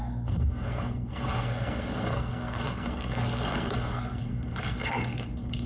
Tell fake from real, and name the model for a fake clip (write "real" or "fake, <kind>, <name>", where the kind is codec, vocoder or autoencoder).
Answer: fake, codec, SNAC